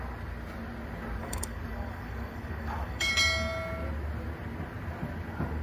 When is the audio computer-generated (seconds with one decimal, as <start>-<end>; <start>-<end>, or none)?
1.2-3.1